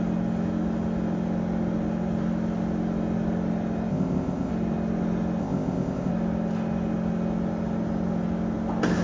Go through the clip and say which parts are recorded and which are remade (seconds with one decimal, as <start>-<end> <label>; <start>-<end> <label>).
0.0-3.9 recorded; 3.9-4.5 remade; 4.5-5.4 recorded; 5.4-6.1 remade; 6.1-9.0 recorded